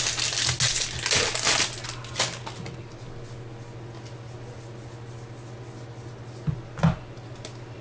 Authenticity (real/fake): real